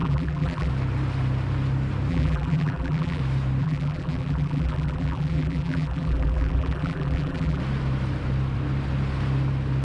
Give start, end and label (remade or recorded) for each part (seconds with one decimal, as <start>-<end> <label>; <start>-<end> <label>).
0.0-0.7 remade; 0.7-2.1 recorded; 2.1-3.2 remade; 3.2-3.6 recorded; 3.6-7.6 remade; 7.6-9.8 recorded